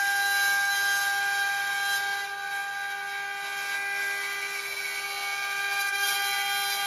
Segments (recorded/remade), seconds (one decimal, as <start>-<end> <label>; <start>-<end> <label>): 0.0-6.9 recorded